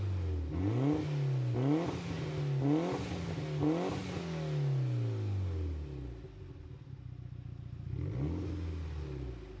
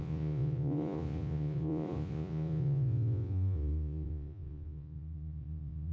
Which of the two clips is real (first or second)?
first